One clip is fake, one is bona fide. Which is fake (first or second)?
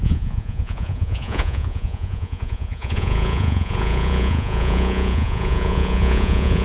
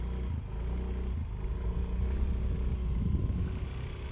first